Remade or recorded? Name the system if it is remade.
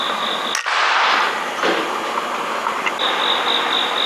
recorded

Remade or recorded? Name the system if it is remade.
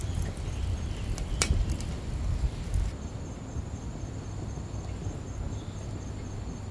recorded